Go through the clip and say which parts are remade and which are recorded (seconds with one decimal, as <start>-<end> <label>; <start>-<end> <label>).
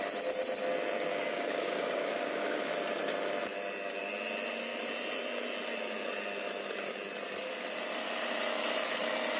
0.0-1.1 recorded; 1.1-2.7 remade; 2.7-9.4 recorded